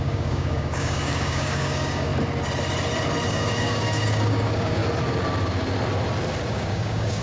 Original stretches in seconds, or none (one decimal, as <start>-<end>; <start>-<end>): 2.1-3.3; 4.8-6.5